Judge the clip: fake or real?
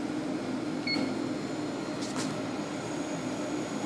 real